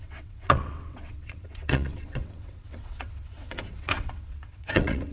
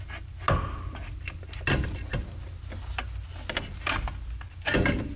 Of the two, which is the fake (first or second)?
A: first